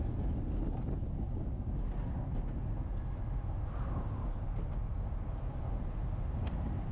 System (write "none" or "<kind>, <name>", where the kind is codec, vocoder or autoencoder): none